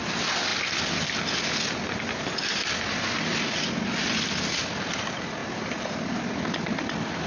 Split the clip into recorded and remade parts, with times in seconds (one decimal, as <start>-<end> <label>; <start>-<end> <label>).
0.0-7.3 recorded